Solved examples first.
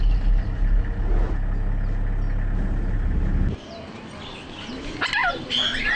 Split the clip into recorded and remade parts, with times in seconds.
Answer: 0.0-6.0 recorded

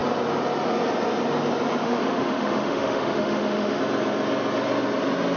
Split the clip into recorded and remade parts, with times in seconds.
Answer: 0.0-1.8 recorded; 1.8-3.8 remade; 3.8-5.4 recorded

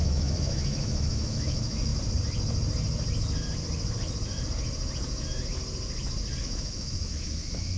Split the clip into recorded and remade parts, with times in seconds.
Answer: 0.0-1.9 remade; 1.9-6.4 recorded; 6.4-7.8 remade

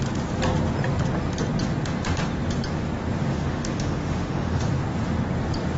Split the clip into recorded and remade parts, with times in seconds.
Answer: 0.0-3.3 recorded; 3.3-4.7 remade; 4.7-5.8 recorded

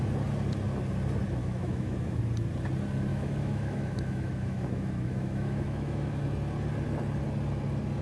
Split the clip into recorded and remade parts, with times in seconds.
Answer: 0.0-1.4 recorded; 1.4-2.2 remade; 2.2-3.1 recorded; 3.1-6.2 remade; 6.2-8.0 recorded

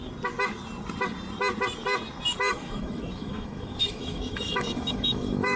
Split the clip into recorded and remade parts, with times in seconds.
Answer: 0.0-2.5 recorded; 2.5-5.6 remade